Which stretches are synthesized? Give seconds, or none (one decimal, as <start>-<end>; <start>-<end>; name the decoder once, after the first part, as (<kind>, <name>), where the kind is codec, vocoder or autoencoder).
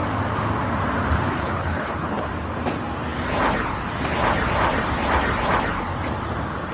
1.3-2.3 (codec, HILCodec)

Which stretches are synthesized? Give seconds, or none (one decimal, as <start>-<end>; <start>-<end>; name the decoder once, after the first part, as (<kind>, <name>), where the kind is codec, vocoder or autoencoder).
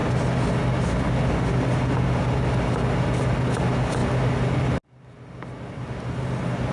none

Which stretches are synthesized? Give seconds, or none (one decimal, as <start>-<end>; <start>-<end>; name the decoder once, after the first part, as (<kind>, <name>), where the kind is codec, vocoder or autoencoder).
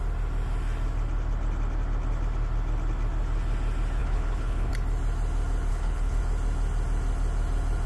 4.0-4.7 (codec, HILCodec); 5.7-6.2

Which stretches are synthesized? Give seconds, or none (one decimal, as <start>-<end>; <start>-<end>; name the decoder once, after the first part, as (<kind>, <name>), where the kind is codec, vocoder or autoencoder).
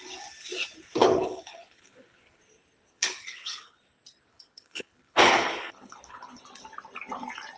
1.0-2.4 (codec, HILCodec); 2.9-3.8; 4.3-6.4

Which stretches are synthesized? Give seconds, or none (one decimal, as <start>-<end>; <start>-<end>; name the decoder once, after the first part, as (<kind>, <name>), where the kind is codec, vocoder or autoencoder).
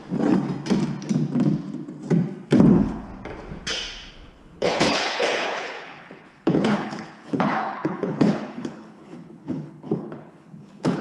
2.7-3.1 (codec, HILCodec); 4.1-11.0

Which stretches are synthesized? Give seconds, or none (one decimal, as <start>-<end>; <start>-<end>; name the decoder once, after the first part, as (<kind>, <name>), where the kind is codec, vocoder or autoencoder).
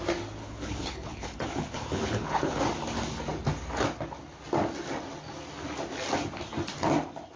0.4-2.6 (codec, HILCodec)